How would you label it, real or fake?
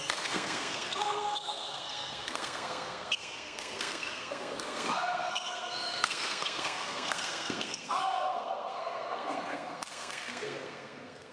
fake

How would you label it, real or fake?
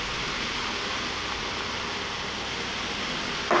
real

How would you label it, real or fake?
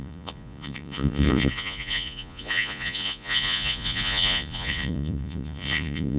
fake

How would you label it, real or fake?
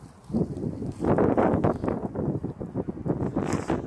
real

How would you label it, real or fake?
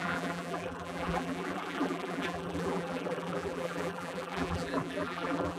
fake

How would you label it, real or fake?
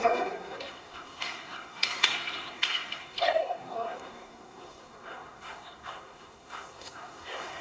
fake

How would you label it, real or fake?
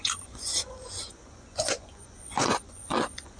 fake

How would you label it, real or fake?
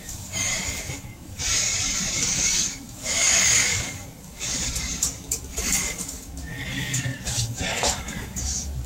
fake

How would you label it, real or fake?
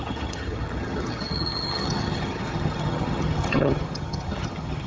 fake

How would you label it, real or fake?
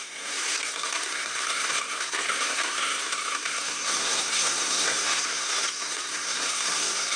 fake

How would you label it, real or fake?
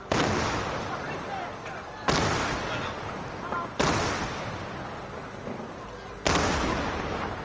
real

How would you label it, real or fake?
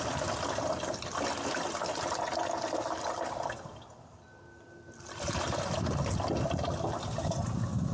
real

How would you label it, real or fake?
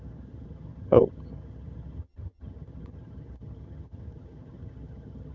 fake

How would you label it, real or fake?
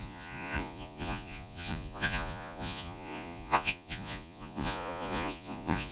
fake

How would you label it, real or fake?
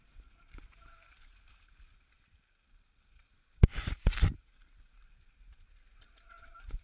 real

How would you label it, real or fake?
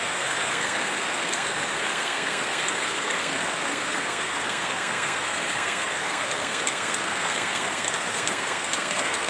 fake